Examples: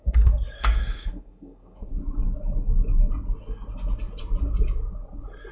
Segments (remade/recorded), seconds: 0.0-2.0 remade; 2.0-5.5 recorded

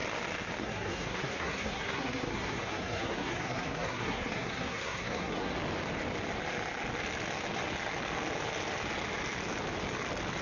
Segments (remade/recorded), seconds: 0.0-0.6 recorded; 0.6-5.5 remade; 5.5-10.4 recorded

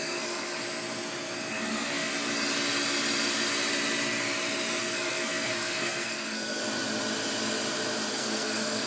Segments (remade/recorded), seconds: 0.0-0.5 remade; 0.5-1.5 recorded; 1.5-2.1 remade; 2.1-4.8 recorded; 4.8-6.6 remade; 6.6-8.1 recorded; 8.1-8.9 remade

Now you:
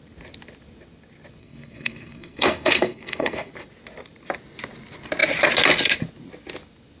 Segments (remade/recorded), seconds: 0.0-1.4 recorded; 1.4-3.5 remade; 3.5-7.0 recorded